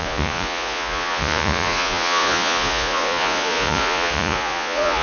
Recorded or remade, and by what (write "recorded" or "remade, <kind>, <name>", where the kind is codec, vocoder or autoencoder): remade, vocoder, Vocos